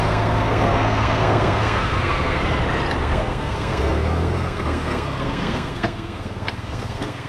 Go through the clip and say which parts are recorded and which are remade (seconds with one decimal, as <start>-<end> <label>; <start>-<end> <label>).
0.0-2.4 remade; 2.4-3.0 recorded; 3.0-7.3 remade